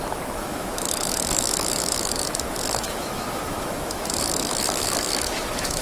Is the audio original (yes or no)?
no